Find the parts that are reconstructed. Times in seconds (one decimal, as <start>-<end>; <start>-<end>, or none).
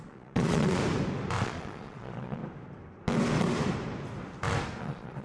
0.0-0.8; 1.4-2.4; 4.8-5.2